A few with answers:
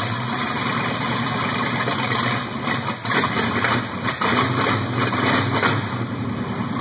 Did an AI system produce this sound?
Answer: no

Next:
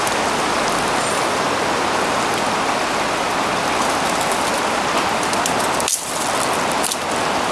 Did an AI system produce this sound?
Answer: yes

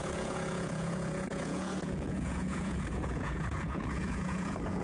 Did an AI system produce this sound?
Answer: yes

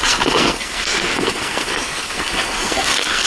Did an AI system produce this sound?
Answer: yes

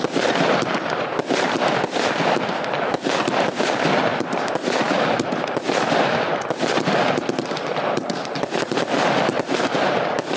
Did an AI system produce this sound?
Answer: yes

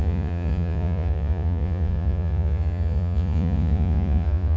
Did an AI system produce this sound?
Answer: yes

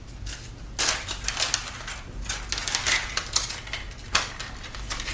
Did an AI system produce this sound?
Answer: no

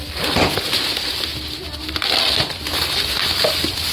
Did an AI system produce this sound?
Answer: no